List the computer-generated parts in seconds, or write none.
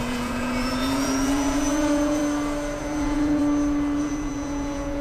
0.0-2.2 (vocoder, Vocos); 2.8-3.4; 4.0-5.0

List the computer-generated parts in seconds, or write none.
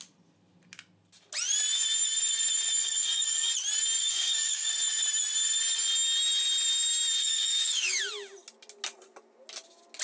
2.8-3.5 (codec, DAC); 4.0-4.7; 7.2-8.0